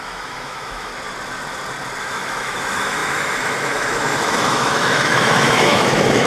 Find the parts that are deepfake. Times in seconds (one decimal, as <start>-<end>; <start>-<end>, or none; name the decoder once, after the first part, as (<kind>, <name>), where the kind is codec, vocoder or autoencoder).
0.0-0.9 (autoencoder, DAC-VAE); 2.0-6.3